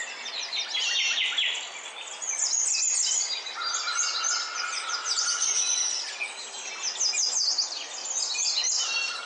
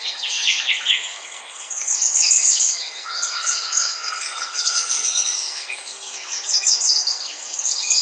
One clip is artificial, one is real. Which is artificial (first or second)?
second